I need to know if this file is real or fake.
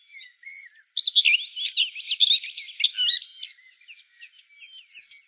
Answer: real